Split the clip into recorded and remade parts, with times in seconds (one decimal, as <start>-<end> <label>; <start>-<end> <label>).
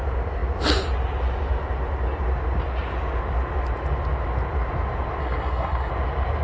0.0-5.2 recorded; 5.2-5.9 remade; 5.9-6.4 recorded